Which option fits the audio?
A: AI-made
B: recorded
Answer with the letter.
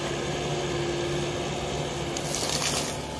B